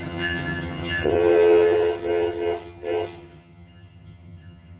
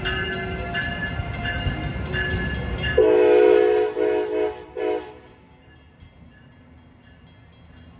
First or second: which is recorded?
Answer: second